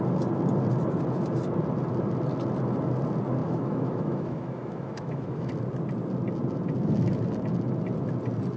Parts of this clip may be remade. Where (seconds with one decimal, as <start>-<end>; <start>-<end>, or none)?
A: 3.4-5.5